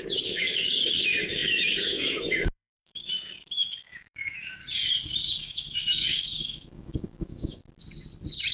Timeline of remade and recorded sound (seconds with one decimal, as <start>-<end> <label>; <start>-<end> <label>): 0.0-4.6 remade; 4.6-5.4 recorded; 5.4-7.6 remade; 7.6-8.5 recorded

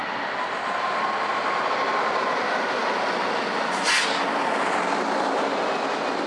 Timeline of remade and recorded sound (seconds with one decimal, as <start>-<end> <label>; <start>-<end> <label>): 0.0-1.3 remade; 1.3-6.3 recorded

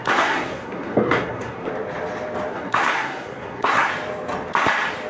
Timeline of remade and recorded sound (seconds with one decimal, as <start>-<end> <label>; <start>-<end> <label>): 0.0-1.7 remade; 1.7-2.5 recorded; 2.5-3.9 remade; 3.9-5.1 recorded

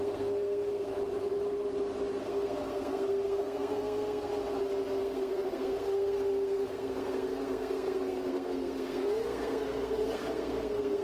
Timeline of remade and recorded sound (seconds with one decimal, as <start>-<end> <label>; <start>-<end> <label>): 0.0-0.9 remade; 0.9-2.2 recorded; 2.2-4.3 remade; 4.3-5.0 recorded; 5.0-11.0 remade

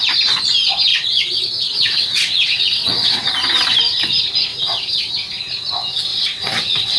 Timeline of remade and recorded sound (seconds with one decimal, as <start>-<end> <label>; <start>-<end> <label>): 0.0-0.9 recorded; 0.9-3.3 remade; 3.3-4.5 recorded; 4.5-5.1 remade; 5.1-6.1 recorded; 6.1-7.0 remade